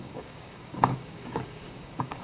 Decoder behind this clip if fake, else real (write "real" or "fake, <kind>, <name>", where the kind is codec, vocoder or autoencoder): fake, codec, DAC